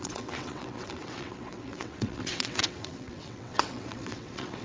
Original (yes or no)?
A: no